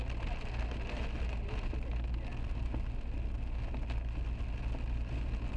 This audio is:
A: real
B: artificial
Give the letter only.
A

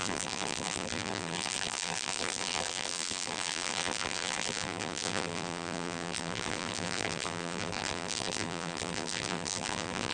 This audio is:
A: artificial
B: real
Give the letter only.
A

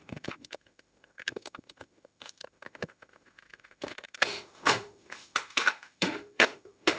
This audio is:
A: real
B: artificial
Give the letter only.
B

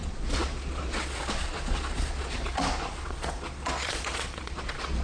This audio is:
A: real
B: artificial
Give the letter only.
B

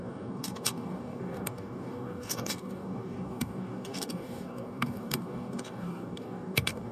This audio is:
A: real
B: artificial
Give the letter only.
B